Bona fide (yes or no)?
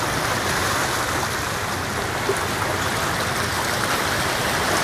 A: yes